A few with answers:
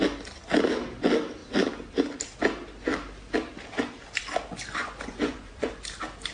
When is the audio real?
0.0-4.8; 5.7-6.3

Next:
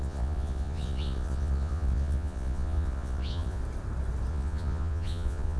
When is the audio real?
3.6-4.3

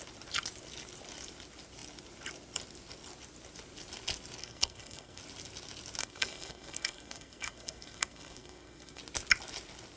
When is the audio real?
0.0-4.4; 5.2-6.0; 9.0-10.0

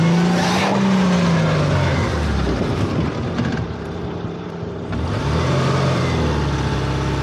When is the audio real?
0.0-1.9; 6.0-7.2

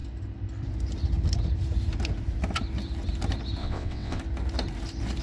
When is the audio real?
0.0-3.6; 4.2-5.2

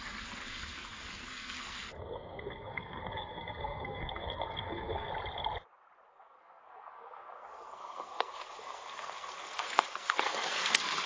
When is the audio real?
5.1-6.1